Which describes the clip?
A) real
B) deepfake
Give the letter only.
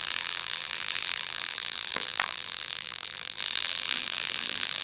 B